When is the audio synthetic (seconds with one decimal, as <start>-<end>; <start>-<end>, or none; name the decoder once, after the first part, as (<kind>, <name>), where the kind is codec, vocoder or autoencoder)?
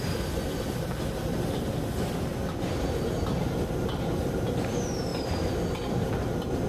none